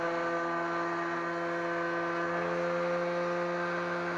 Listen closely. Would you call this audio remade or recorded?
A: recorded